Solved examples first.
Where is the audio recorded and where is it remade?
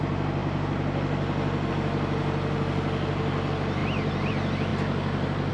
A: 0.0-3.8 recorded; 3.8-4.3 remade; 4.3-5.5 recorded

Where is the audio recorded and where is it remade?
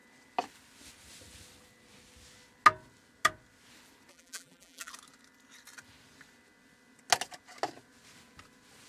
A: 0.0-4.1 recorded; 4.1-4.9 remade; 4.9-8.9 recorded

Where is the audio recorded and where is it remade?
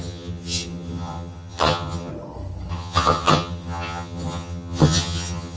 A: 0.0-2.1 remade; 2.1-2.7 recorded; 2.7-5.6 remade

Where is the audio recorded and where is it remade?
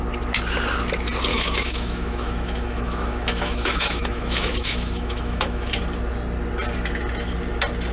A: 0.0-1.3 recorded; 1.3-5.8 remade; 5.8-7.9 recorded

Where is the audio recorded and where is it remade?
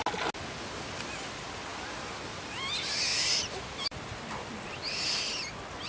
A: 0.0-1.7 recorded; 1.7-4.5 remade; 4.5-5.9 recorded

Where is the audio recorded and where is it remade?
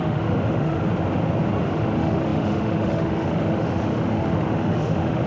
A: 0.0-0.8 remade; 0.8-1.6 recorded; 1.6-5.3 remade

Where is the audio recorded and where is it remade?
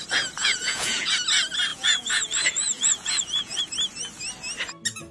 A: 0.0-0.4 recorded; 0.4-1.1 remade; 1.1-1.7 recorded; 1.7-3.6 remade; 3.6-5.1 recorded